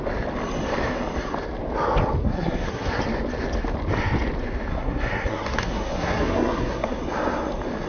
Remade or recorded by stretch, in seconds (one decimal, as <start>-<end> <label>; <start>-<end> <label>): 0.0-2.2 recorded; 2.2-3.0 remade; 3.0-4.7 recorded; 4.7-7.0 remade; 7.0-7.9 recorded